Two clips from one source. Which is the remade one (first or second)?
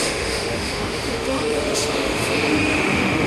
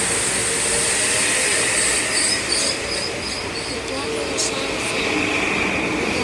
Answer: first